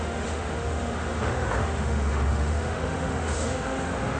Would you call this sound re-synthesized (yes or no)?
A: yes